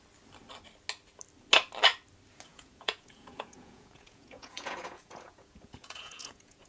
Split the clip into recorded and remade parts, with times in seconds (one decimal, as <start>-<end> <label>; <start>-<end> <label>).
0.0-2.5 recorded; 2.5-6.7 remade